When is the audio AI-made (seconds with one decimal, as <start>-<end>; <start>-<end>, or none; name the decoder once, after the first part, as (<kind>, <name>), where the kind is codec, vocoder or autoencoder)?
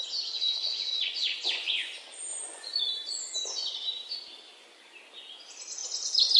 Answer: 0.6-1.9 (vocoder, Vocos); 2.3-2.9